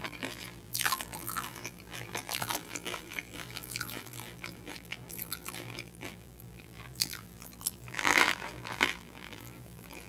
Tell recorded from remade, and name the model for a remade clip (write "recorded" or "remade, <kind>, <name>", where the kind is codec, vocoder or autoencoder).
remade, vocoder, BigVGAN v2